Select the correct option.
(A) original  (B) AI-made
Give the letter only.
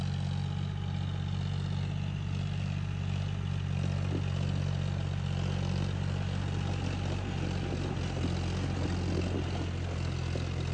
A